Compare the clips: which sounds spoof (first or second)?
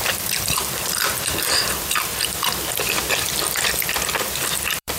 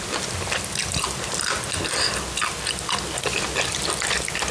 first